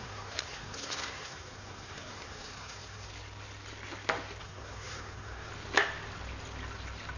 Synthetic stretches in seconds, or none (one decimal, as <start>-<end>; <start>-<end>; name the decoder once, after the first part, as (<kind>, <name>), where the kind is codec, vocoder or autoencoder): 0.0-3.1 (codec, SNAC); 4.4-5.5